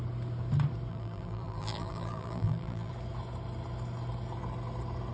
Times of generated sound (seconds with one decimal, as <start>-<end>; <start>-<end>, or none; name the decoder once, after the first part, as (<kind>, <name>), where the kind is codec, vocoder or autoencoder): 0.9-2.9 (vocoder, BigVGAN v2)